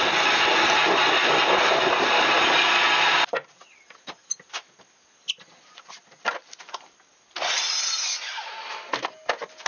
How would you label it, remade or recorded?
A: recorded